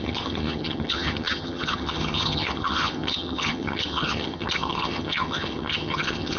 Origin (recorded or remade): remade